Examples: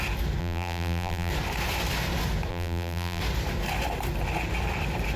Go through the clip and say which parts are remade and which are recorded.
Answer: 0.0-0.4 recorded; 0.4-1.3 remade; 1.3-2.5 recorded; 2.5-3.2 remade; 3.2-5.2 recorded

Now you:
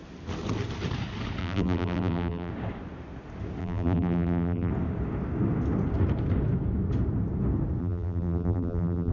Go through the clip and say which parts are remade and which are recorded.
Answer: 0.0-1.4 recorded; 1.4-2.5 remade; 2.5-3.6 recorded; 3.6-4.7 remade; 4.7-7.8 recorded; 7.8-9.1 remade

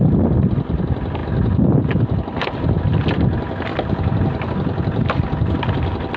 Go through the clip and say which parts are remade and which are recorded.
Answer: 0.0-3.7 recorded; 3.7-4.5 remade; 4.5-6.2 recorded

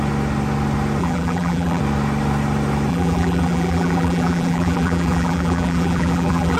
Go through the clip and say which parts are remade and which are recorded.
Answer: 0.0-1.0 recorded; 1.0-1.8 remade; 1.8-2.9 recorded; 2.9-6.6 remade

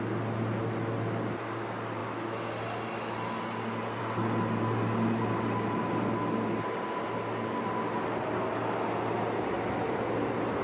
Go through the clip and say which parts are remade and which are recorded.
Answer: 0.0-10.6 recorded